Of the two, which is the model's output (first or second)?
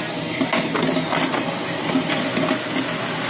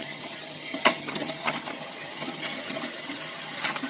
second